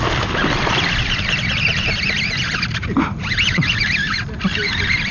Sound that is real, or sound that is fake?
real